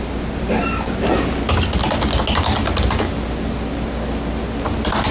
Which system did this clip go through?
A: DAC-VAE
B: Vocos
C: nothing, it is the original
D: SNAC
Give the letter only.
C